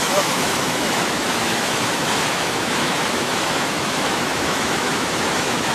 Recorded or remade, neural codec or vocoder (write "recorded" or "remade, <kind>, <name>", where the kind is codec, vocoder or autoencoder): remade, autoencoder, DAC-VAE